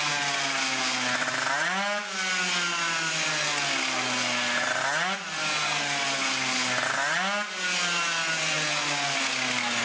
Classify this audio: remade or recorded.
recorded